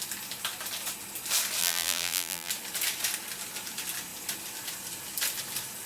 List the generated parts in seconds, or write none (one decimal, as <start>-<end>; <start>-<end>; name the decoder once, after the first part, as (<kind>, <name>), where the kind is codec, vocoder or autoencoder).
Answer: 1.6-2.5 (vocoder, BigVGAN v2)